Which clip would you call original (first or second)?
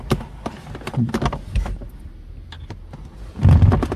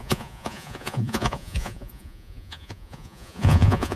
first